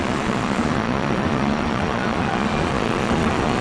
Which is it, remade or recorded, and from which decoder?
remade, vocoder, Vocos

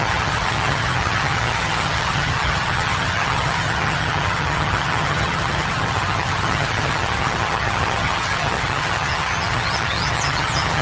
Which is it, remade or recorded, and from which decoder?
remade, vocoder, HiFi-GAN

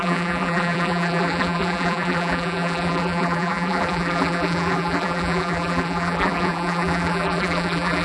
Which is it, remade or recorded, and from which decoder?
remade, vocoder, BigVGAN v2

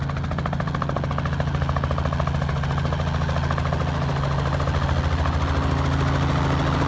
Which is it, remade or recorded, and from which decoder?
recorded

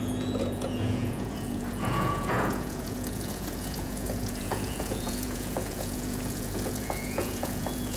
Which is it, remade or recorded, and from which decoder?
remade, vocoder, Vocos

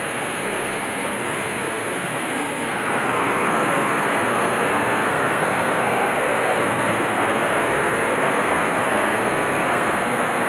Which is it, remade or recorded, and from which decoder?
remade, codec, SNAC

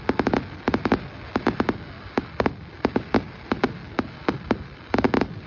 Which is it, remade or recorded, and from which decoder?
recorded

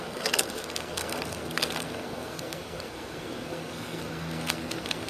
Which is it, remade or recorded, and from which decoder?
remade, codec, SNAC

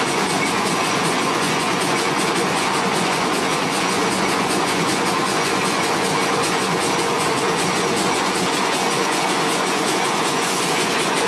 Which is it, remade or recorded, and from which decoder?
remade, vocoder, Vocos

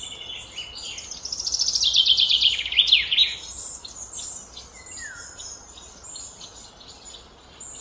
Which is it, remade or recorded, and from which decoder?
recorded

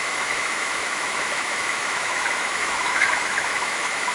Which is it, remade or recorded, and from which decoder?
remade, autoencoder, DAC-VAE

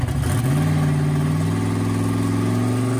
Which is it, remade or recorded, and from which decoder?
recorded